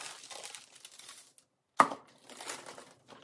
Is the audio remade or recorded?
recorded